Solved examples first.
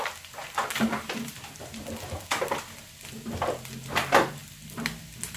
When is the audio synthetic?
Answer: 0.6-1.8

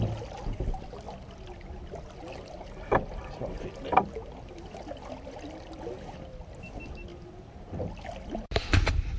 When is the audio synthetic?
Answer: none

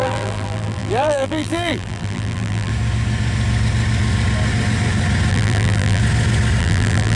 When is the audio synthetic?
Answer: 0.0-2.7; 5.3-6.0; 6.6-7.1

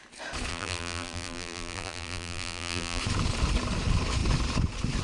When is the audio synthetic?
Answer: 0.5-3.0

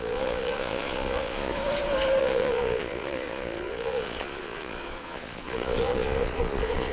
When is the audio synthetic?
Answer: 0.0-1.5; 2.2-6.9

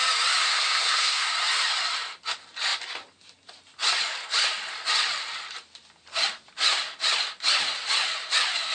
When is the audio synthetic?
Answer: 0.4-1.3

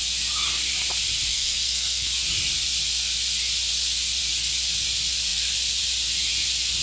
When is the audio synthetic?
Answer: 1.3-2.1

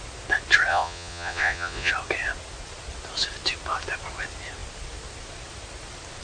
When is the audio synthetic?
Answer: 0.7-1.9